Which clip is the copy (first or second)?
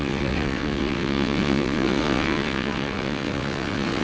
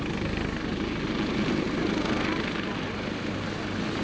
first